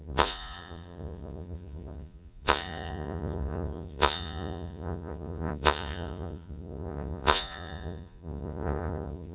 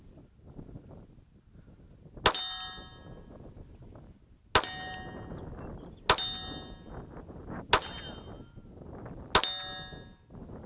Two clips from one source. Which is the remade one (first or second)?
first